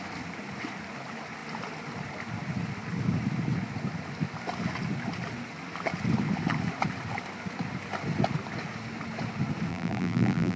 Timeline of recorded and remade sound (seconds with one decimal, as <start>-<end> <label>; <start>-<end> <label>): 0.0-9.7 recorded; 9.7-10.6 remade